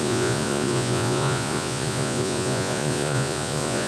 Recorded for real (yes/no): no